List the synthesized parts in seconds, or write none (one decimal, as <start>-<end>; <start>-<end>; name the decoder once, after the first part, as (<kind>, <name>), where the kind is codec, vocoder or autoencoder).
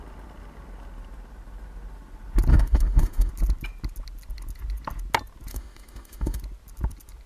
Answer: 2.5-3.3 (autoencoder, DAC-VAE); 5.5-6.4